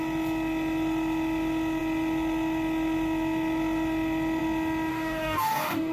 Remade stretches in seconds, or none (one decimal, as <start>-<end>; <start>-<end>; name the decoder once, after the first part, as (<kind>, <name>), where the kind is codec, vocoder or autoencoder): 4.9-5.9 (codec, DAC)